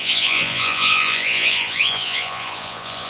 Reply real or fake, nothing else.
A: fake